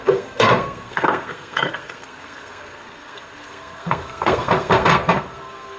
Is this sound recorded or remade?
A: remade